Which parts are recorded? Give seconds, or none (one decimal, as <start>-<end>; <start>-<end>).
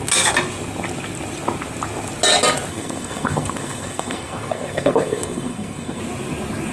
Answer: 0.0-2.7; 6.0-6.7